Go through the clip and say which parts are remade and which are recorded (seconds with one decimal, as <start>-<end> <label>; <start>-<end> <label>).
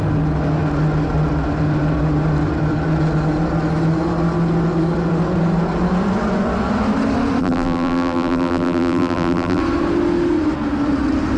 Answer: 0.0-7.4 recorded; 7.4-9.6 remade; 9.6-11.4 recorded